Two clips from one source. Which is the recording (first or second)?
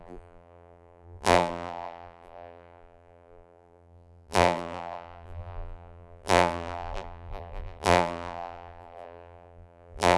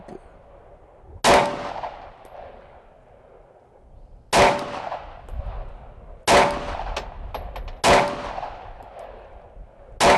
second